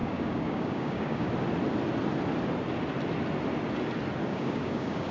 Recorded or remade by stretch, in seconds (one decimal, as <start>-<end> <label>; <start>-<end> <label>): 0.0-1.3 remade; 1.3-4.2 recorded; 4.2-5.1 remade